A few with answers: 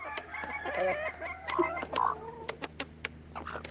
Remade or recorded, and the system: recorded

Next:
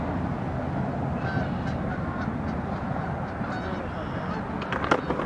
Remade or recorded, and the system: recorded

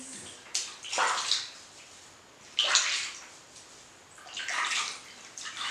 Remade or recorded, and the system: recorded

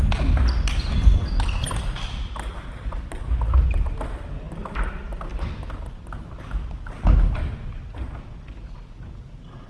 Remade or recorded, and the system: recorded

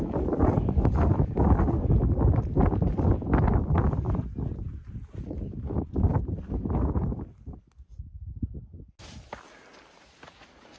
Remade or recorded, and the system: recorded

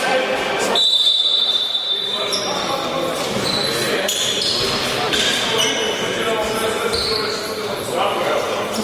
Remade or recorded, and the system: recorded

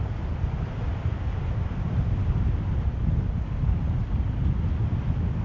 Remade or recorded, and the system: recorded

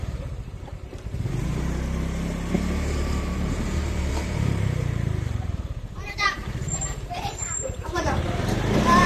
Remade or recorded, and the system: remade, vocoder, BigVGAN v2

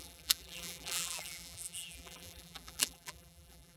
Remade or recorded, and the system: remade, vocoder, BigVGAN v2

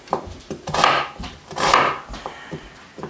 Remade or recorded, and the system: recorded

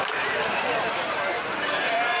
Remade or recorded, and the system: remade, vocoder, BigVGAN v2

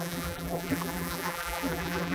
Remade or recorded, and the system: remade, vocoder, BigVGAN v2